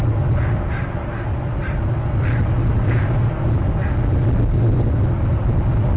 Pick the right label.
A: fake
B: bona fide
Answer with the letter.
B